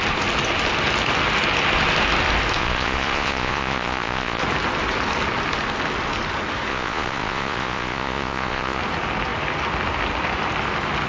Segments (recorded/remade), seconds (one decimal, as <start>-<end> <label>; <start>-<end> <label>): 0.0-2.6 recorded; 2.6-4.4 remade; 4.4-6.7 recorded; 6.7-8.8 remade; 8.8-11.1 recorded

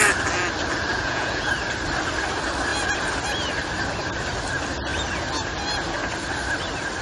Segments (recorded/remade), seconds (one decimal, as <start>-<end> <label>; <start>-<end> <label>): 0.0-0.9 recorded; 0.9-1.5 remade; 1.5-7.0 recorded

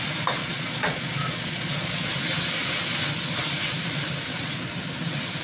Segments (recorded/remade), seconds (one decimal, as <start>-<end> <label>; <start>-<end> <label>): 0.0-0.4 recorded; 0.4-2.1 remade; 2.1-5.4 recorded

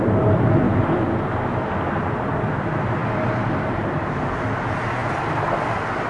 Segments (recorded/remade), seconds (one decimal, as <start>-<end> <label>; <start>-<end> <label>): 0.0-6.1 recorded

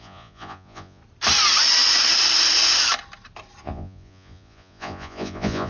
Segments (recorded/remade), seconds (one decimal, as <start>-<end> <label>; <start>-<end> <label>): 0.0-1.0 remade; 1.0-3.6 recorded; 3.6-5.7 remade

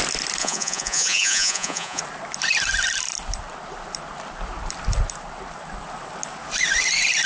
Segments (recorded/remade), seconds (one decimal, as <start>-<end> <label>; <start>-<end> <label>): 0.0-0.4 recorded; 0.4-2.0 remade; 2.0-7.3 recorded

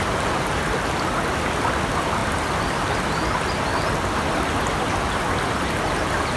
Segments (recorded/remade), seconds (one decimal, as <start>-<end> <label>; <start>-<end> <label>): 0.0-6.4 recorded